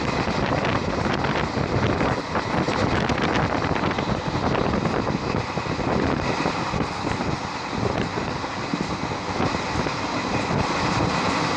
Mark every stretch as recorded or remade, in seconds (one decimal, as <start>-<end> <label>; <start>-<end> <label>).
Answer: 0.0-11.6 recorded